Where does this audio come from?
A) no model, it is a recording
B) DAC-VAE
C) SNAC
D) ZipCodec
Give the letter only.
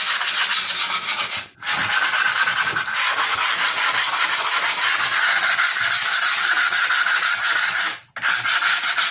A